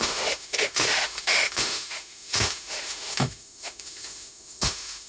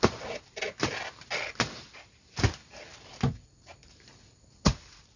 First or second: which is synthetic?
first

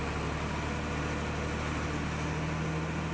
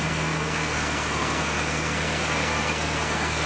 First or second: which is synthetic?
second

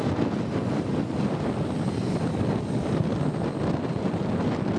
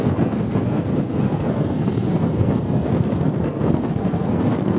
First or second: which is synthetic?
second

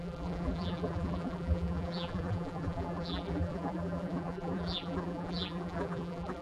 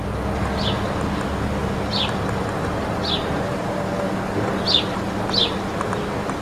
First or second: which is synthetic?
first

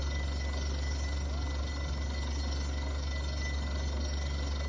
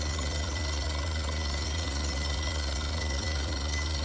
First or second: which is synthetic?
second